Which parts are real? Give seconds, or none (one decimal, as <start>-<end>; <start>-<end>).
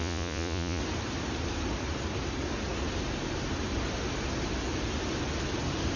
0.8-6.0